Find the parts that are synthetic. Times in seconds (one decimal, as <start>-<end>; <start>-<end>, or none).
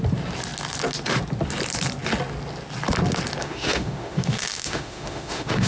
3.4-5.7